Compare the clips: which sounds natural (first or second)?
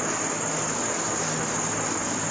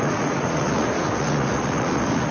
first